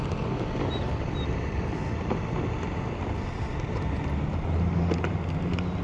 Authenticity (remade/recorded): recorded